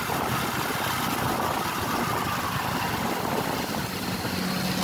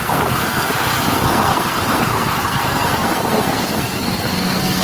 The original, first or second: first